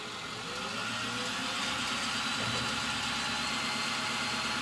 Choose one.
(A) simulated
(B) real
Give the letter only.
B